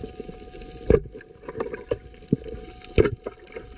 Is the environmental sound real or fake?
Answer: real